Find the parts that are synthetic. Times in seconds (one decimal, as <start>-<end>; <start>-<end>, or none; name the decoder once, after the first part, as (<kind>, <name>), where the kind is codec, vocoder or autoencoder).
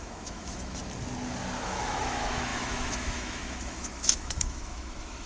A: 0.0-0.8 (autoencoder, DAC-VAE); 1.6-5.3